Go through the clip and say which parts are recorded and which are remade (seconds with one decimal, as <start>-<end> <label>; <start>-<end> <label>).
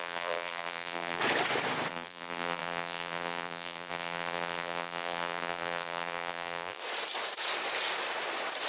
0.0-1.2 remade; 1.2-1.9 recorded; 1.9-6.8 remade; 6.8-8.7 recorded